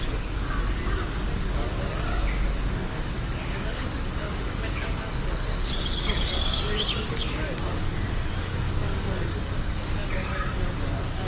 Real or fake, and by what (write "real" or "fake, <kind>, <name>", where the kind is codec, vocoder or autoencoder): fake, codec, DAC